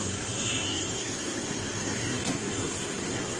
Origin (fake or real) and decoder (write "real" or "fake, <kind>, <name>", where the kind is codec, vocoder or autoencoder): fake, codec, SNAC